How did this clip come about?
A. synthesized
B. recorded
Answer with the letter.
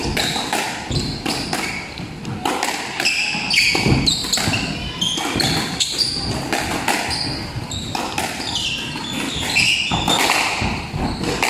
B